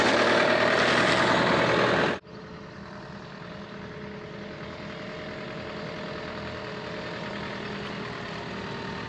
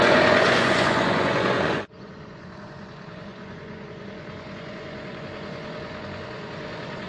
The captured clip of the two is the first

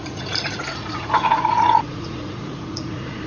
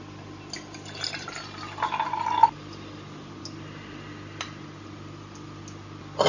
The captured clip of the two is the second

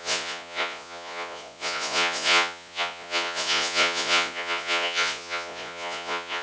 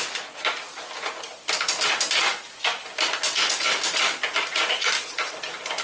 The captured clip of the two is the second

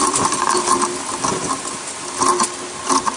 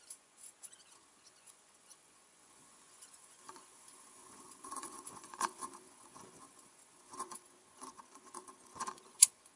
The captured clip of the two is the first